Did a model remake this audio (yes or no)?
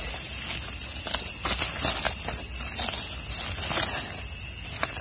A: no